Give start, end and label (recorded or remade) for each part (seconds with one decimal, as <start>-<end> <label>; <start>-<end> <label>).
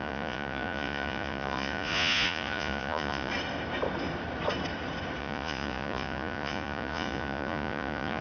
0.0-3.3 remade; 3.3-5.2 recorded; 5.2-8.2 remade